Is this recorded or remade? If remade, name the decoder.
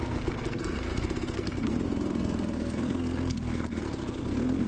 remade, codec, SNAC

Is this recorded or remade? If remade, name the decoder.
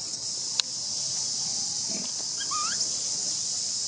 recorded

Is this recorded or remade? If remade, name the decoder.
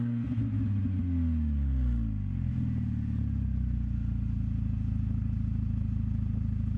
recorded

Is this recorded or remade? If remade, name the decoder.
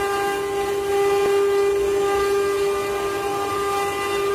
recorded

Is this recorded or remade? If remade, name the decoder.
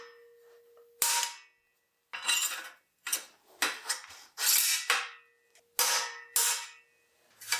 recorded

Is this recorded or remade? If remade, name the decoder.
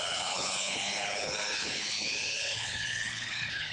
remade, codec, HILCodec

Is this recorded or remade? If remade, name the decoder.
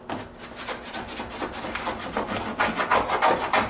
recorded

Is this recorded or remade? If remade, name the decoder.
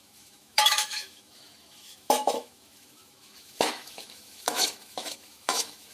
remade, autoencoder, DAC-VAE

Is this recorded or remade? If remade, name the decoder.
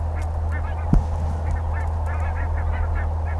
recorded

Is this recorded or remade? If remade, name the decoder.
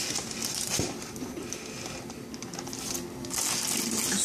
recorded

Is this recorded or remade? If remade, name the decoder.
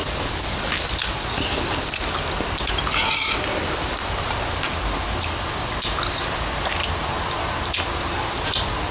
recorded